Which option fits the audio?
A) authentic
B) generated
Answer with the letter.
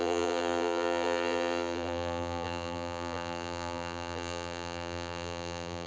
B